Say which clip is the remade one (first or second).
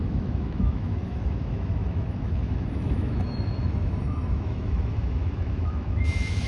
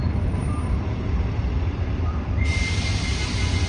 first